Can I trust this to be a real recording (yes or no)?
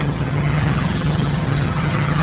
no